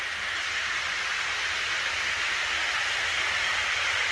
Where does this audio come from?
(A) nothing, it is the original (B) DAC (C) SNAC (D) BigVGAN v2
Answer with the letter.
A